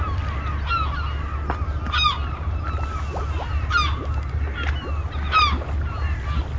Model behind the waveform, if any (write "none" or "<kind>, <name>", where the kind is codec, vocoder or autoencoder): none